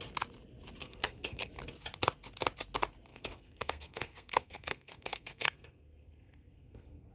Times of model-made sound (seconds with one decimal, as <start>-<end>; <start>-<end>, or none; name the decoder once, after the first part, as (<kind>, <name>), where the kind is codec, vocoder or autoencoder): 0.8-1.5 (codec, SNAC); 3.1-7.1